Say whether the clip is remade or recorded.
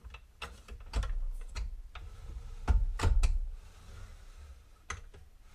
recorded